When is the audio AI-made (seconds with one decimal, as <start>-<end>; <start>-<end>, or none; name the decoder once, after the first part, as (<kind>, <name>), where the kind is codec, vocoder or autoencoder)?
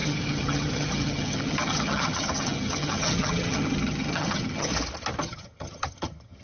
0.0-4.7 (vocoder, HiFi-GAN); 5.2-6.4